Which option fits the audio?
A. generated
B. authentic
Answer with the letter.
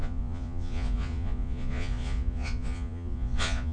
A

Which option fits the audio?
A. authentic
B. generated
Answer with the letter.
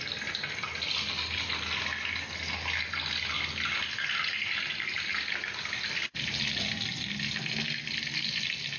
A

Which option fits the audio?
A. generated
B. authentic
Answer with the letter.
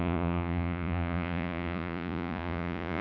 A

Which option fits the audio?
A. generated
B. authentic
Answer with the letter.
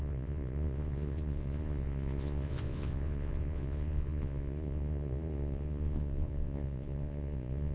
A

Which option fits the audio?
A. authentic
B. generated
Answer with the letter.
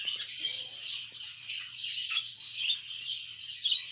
B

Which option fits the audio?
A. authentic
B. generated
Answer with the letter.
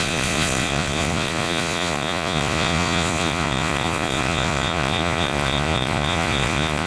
B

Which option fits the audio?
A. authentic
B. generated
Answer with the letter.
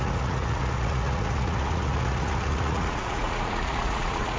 B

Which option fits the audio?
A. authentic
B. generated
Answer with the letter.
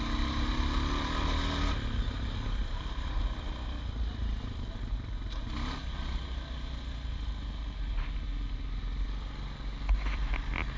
A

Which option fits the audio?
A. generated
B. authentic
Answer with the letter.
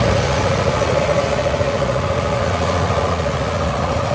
A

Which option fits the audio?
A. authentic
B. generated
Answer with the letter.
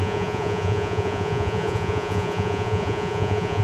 B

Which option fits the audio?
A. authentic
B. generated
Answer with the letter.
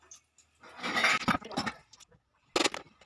A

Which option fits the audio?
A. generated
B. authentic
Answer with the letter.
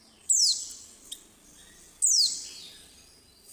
B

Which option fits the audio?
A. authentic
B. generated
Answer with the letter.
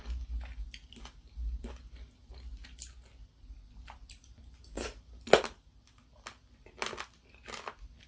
A